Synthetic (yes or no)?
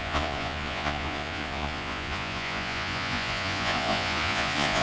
yes